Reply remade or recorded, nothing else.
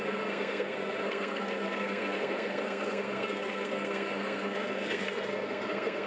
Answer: remade